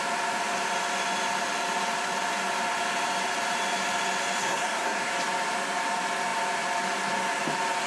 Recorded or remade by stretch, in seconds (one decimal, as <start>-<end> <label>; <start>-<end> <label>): 0.0-4.4 recorded; 4.4-5.1 remade; 5.1-7.9 recorded